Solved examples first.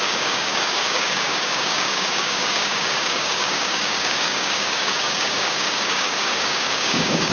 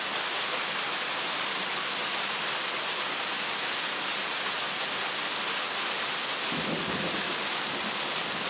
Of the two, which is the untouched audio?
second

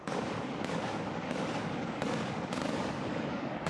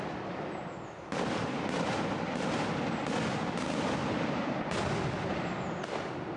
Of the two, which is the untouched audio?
second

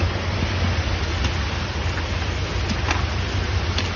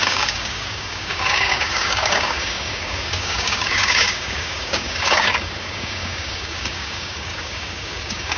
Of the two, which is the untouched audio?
first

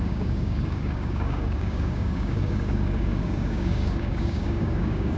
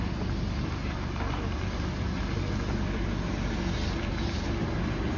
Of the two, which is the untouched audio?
second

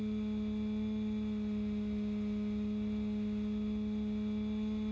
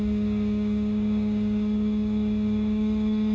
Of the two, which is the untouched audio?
first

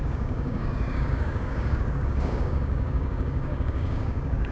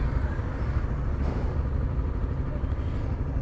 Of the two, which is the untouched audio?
second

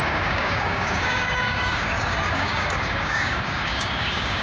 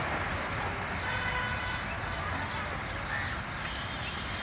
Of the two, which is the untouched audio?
second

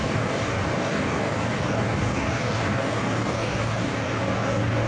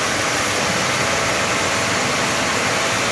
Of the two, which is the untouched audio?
second